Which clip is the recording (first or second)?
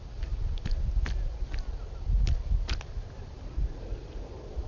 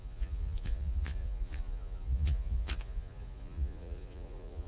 first